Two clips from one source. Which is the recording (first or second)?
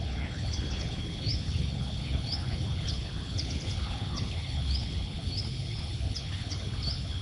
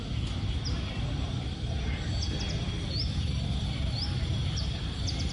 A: second